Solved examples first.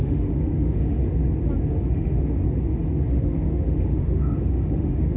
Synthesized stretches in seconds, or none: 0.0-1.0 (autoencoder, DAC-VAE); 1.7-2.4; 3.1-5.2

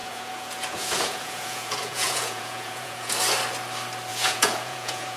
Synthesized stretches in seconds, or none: 0.0-3.1 (vocoder, Vocos); 4.1-5.2

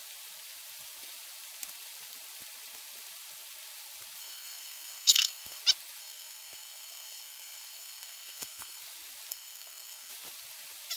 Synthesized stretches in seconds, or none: 4.2-5.6 (codec, SNAC); 6.0-8.8; 9.3-10.1

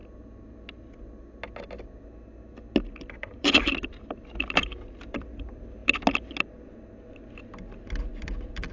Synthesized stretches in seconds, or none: 3.1-5.8 (vocoder, BigVGAN v2); 8.1-8.7

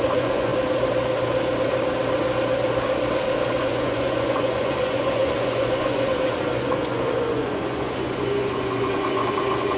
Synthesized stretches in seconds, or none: 0.0-0.5 (vocoder, Vocos); 3.6-9.8

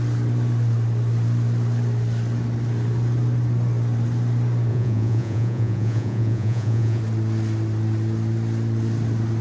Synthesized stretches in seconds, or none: 4.7-7.0 (vocoder, Vocos)

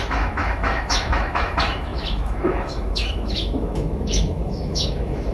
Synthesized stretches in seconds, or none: 0.0-5.3 (autoencoder, DAC-VAE)

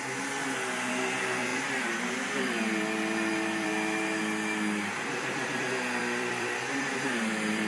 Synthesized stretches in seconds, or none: 1.5-4.2 (vocoder, BigVGAN v2); 6.0-7.7